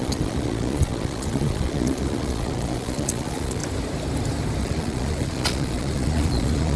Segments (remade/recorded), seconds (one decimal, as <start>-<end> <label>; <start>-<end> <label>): 0.0-3.6 remade; 3.6-4.6 recorded; 4.6-6.8 remade